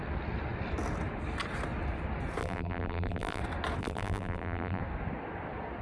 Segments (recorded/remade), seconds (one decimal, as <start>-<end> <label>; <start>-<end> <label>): 0.0-2.4 recorded; 2.4-3.4 remade; 3.4-3.8 recorded; 3.8-4.8 remade; 4.8-5.8 recorded